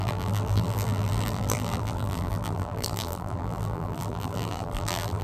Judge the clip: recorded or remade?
remade